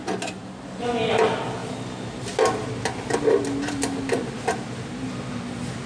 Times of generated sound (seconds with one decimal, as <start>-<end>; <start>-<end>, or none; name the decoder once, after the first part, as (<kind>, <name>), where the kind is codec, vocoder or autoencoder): none